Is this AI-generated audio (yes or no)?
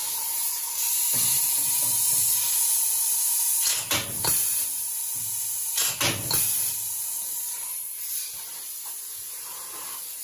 no